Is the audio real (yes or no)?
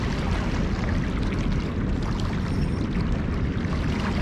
yes